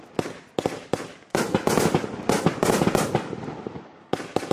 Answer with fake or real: real